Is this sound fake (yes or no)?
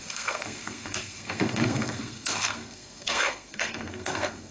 yes